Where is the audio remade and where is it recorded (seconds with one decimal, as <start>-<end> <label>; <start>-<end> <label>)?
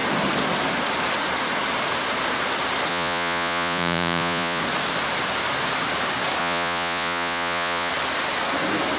0.0-2.9 recorded; 2.9-4.6 remade; 4.6-6.4 recorded; 6.4-7.9 remade; 7.9-9.0 recorded